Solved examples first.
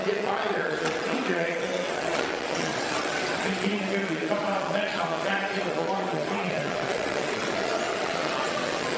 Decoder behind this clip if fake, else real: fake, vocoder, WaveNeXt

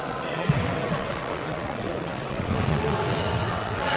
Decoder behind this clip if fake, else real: fake, vocoder, WaveNeXt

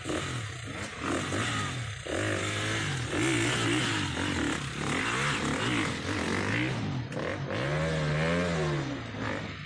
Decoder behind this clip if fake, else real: real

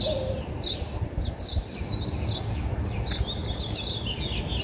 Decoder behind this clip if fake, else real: real